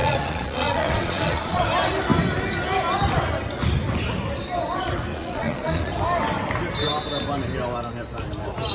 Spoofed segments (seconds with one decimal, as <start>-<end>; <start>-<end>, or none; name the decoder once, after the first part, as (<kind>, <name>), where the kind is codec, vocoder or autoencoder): 0.0-1.6 (vocoder, Vocos); 5.1-5.9